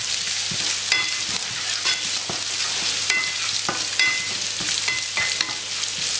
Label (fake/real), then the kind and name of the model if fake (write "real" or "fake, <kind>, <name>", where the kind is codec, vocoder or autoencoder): real